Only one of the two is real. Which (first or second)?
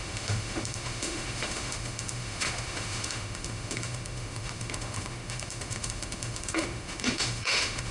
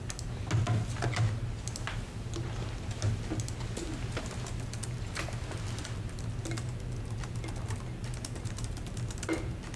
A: second